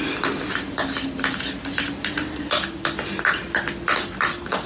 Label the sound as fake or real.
real